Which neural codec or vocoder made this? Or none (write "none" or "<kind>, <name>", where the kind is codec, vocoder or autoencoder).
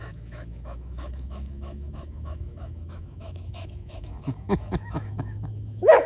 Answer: autoencoder, DAC-VAE